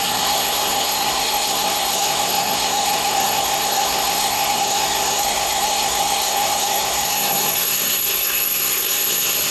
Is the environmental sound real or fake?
fake